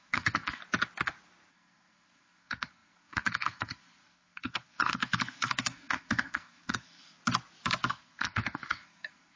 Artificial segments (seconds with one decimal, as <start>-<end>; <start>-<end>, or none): 0.0-0.6; 1.5-7.2; 7.9-9.4